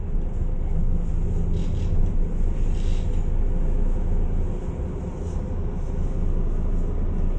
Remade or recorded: recorded